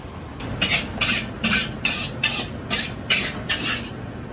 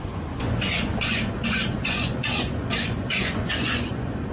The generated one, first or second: second